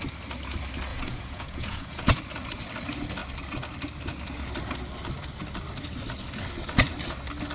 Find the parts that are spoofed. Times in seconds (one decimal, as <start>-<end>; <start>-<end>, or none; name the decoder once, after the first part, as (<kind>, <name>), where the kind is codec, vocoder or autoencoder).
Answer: 0.9-2.2 (vocoder, Vocos)